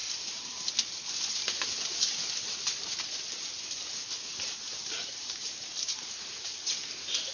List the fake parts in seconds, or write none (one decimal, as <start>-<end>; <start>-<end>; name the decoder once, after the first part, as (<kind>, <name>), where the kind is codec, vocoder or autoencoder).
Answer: 0.0-0.7 (vocoder, BigVGAN v2); 4.3-6.8